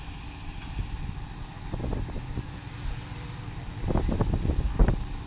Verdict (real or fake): real